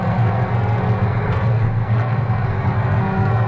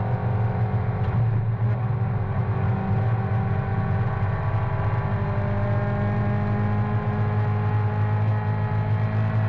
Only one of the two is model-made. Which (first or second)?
first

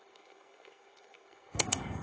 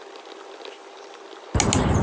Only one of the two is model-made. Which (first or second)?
first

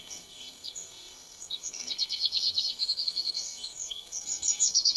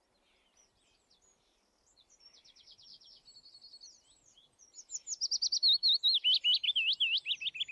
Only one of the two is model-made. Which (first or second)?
first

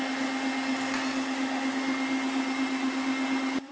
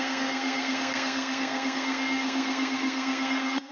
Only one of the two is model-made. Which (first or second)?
second